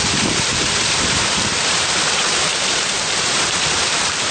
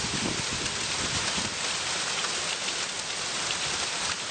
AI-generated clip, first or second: first